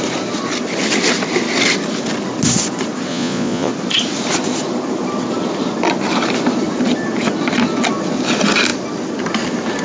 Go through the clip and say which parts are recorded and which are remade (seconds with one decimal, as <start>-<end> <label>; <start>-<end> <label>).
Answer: 0.0-3.1 recorded; 3.1-3.7 remade; 3.7-9.8 recorded